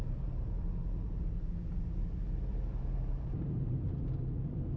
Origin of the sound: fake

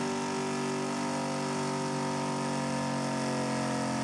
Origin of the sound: real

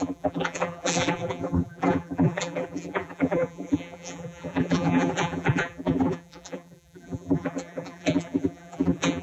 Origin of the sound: fake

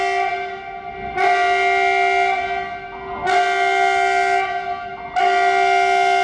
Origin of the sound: real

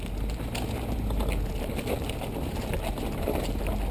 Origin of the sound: real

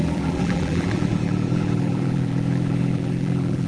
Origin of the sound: fake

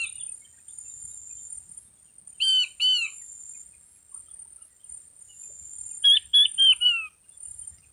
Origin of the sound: real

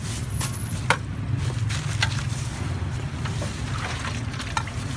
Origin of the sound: fake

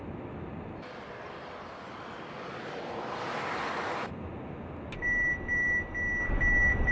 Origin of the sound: real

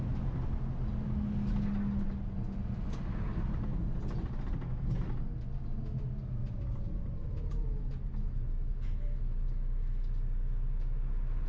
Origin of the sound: real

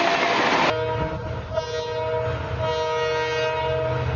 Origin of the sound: real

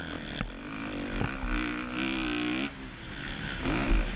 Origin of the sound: real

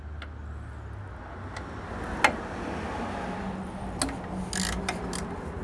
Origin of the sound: real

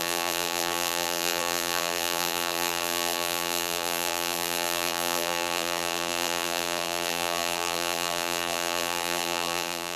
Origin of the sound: fake